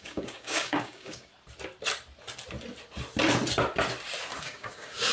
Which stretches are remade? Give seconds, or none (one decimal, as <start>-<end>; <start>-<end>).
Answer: 0.0-1.3; 4.4-5.1